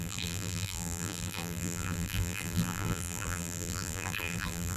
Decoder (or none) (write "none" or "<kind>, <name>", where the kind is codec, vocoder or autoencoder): vocoder, BigVGAN v2